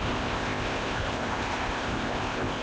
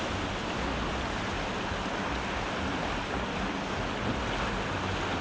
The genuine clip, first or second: second